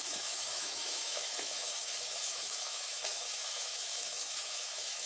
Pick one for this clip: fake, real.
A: fake